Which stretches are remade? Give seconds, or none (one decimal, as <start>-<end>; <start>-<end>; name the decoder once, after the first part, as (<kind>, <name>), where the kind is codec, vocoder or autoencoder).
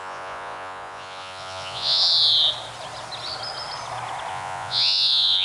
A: 0.0-2.0 (vocoder, Vocos); 4.3-5.4